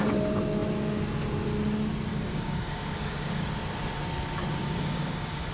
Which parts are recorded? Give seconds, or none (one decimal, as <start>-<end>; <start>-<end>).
0.0-2.1; 3.4-4.6